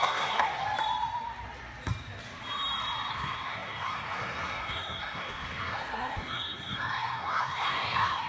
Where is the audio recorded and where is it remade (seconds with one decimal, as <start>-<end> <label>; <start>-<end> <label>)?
0.0-0.6 remade; 0.6-3.1 recorded; 3.1-8.3 remade